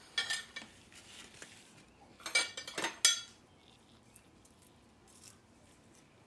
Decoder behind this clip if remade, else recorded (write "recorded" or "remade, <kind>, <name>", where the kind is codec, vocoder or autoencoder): recorded